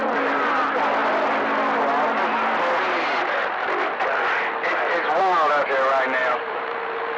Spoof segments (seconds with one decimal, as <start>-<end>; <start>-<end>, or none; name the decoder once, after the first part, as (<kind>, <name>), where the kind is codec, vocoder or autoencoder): 0.0-0.6 (vocoder, BigVGAN v2); 6.2-6.8